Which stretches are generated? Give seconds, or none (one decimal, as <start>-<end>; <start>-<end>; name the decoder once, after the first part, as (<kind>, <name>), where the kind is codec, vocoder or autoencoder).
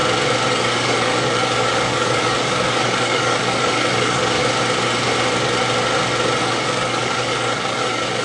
0.5-4.4 (codec, DAC); 6.4-8.2